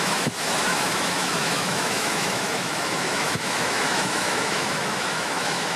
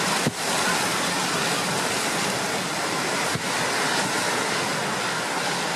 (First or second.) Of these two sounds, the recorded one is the second